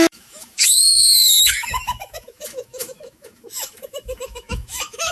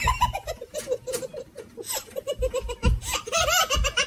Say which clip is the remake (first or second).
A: first